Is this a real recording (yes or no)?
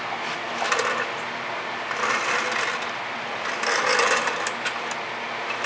yes